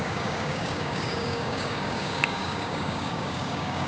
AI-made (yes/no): yes